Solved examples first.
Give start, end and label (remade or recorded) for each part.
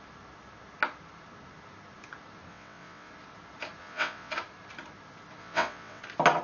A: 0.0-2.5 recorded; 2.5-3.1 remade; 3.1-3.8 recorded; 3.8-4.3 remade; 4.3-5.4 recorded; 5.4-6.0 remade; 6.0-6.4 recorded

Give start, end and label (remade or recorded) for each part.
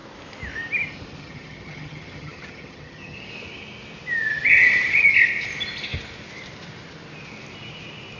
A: 0.0-1.2 recorded; 1.2-3.3 remade; 3.3-4.3 recorded; 4.3-5.1 remade; 5.1-8.2 recorded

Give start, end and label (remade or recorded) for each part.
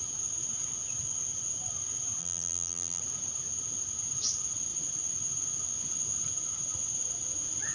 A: 0.0-2.2 recorded; 2.2-3.0 remade; 3.0-7.7 recorded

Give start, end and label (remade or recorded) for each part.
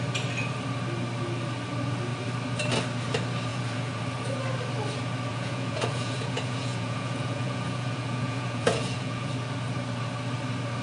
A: 0.0-3.5 recorded; 3.5-4.0 remade; 4.0-5.3 recorded; 5.3-9.3 remade; 9.3-10.8 recorded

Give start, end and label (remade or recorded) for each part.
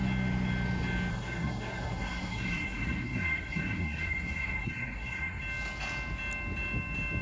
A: 0.0-1.1 recorded; 1.1-5.4 remade; 5.4-7.2 recorded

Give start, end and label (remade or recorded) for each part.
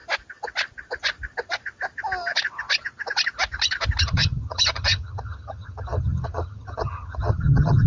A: 0.0-4.0 recorded; 4.0-7.9 remade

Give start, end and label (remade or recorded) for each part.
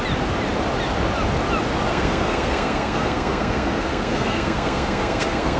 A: 0.0-1.9 recorded; 1.9-5.6 remade